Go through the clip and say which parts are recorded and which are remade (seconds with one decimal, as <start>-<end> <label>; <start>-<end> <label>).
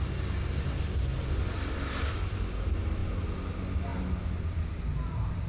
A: 0.0-5.5 recorded